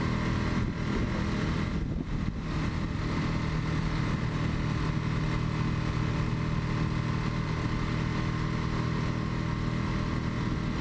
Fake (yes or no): no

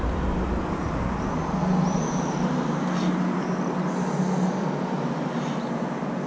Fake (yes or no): no